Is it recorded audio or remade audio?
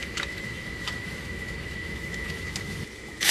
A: remade